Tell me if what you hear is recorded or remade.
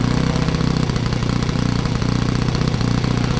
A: recorded